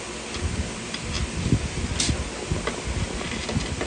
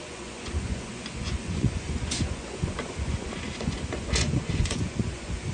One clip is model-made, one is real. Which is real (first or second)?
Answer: first